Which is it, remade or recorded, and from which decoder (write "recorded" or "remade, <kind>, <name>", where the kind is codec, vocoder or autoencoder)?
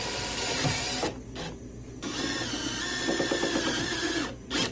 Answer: recorded